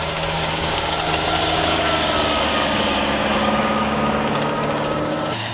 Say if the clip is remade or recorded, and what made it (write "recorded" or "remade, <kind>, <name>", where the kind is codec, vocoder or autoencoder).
remade, codec, DAC